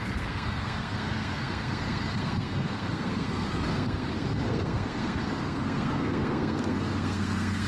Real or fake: fake